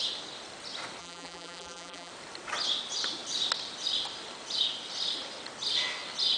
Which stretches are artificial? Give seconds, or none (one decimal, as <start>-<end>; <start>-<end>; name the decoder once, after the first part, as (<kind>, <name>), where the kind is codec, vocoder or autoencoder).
1.0-2.1 (vocoder, BigVGAN v2)